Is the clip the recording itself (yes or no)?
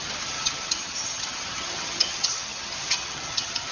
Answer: no